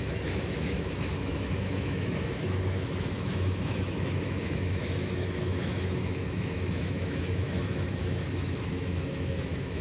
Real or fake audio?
fake